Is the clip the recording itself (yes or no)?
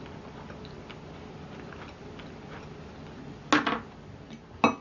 yes